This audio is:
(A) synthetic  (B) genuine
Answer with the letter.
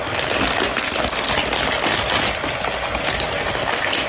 B